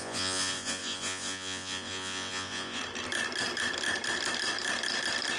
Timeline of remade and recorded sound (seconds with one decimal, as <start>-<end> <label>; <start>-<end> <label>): 0.0-2.8 remade; 2.8-5.4 recorded